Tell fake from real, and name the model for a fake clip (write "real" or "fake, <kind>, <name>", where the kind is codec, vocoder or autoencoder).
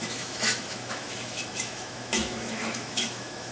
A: fake, autoencoder, DAC-VAE